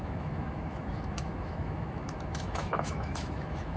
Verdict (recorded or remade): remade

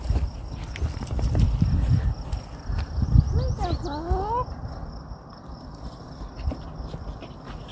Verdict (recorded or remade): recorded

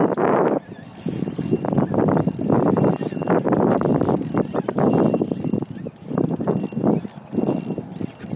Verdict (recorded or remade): recorded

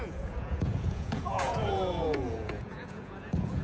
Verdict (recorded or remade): remade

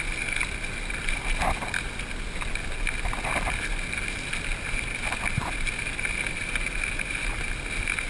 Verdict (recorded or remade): recorded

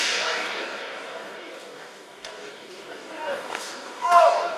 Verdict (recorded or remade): remade